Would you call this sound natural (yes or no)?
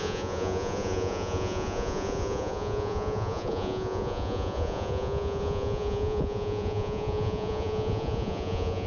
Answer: no